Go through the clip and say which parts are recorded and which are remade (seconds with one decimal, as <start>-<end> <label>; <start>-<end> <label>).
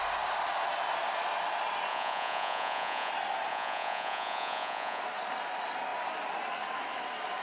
0.0-1.9 recorded; 1.9-3.1 remade; 3.1-3.5 recorded; 3.5-5.0 remade; 5.0-7.4 recorded